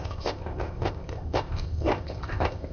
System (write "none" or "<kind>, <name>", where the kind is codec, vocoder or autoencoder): codec, ZipCodec